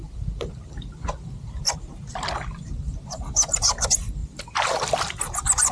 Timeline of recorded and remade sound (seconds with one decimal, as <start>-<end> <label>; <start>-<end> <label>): 0.0-4.2 recorded; 4.2-5.2 remade; 5.2-5.7 recorded